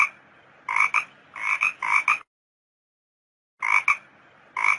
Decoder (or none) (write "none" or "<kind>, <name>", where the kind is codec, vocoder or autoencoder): none